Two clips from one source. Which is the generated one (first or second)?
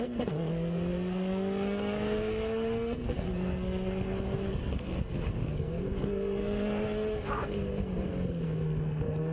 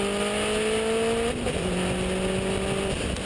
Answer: first